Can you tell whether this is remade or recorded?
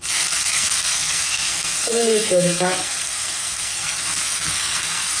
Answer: remade